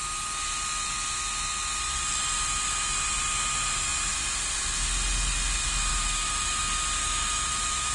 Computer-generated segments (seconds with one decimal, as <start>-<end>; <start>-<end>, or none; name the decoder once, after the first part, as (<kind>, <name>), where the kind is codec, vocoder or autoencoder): 5.9-6.6 (autoencoder, DAC-VAE); 7.0-7.9